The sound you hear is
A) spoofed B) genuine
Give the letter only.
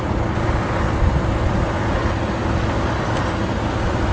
B